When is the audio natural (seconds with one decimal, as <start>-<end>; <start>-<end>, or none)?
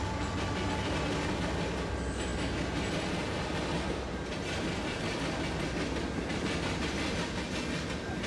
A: 0.0-8.3